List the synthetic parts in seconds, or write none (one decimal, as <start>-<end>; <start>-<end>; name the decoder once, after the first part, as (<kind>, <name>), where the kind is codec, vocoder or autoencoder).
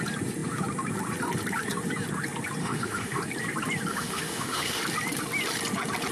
2.6-3.2 (autoencoder, DAC-VAE); 3.9-4.8